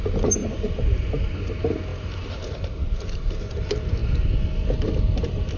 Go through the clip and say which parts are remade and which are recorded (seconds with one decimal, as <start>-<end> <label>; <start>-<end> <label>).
0.0-0.4 recorded; 0.4-1.1 remade; 1.1-1.9 recorded; 1.9-3.6 remade; 3.6-5.6 recorded